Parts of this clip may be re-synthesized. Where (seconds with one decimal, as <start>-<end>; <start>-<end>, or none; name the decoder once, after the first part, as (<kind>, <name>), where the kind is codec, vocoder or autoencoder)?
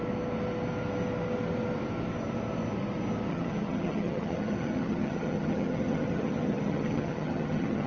3.3-7.9 (vocoder, HiFi-GAN)